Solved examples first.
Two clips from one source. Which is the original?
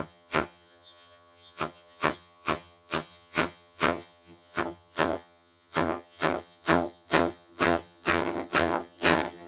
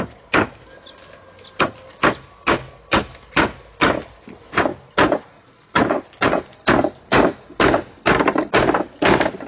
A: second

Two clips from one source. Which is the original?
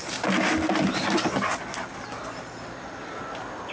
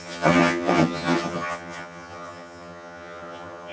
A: first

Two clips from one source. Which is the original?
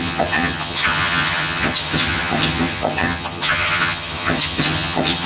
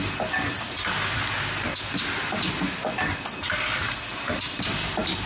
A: second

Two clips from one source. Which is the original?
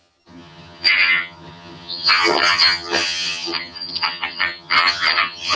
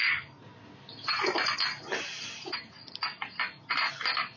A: second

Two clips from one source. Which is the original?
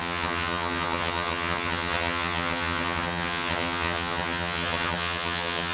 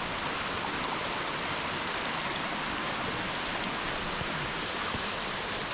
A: second